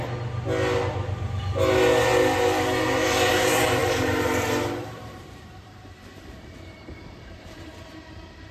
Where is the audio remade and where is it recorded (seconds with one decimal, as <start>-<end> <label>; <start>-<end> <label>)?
0.0-3.8 recorded; 3.8-8.5 remade